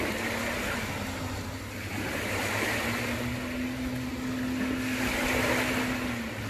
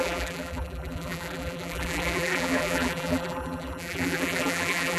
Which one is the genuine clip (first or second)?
first